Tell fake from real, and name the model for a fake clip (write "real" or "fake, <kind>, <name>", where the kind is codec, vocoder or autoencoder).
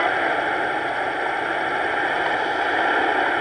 real